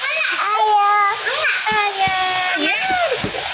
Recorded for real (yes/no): yes